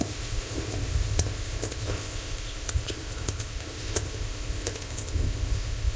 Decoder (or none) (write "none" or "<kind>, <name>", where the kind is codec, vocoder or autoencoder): codec, ZipCodec